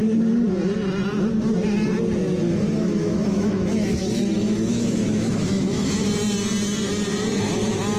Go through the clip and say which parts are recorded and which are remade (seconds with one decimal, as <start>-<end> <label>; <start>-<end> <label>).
0.0-2.4 recorded; 2.4-6.1 remade; 6.1-8.0 recorded